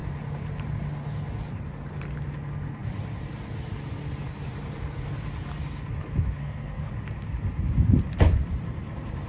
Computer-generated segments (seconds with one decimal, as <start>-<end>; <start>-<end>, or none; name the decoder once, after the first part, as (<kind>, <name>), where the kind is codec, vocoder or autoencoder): 6.4-6.9 (codec, SNAC)